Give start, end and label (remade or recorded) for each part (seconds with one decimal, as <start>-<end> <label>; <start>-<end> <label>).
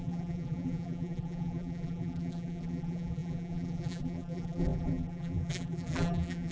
0.0-6.5 remade